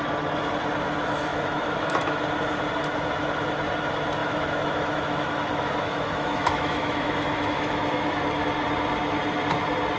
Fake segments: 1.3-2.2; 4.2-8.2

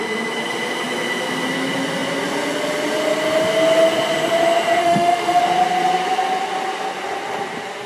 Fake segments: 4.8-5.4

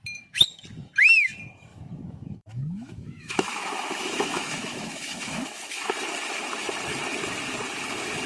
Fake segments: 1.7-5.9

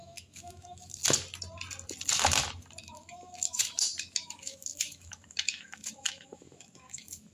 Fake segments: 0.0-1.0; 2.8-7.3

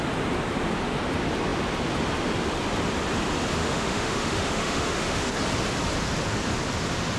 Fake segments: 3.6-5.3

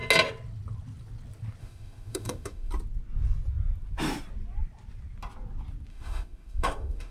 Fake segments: 1.6-2.7; 5.9-7.1

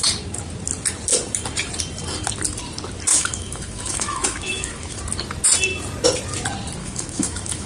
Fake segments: 3.1-5.0; 6.8-7.7